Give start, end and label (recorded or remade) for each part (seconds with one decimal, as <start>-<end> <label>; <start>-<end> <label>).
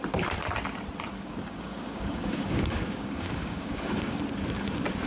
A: 0.0-1.1 recorded; 1.1-4.2 remade; 4.2-5.1 recorded